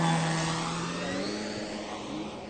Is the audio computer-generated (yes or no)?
no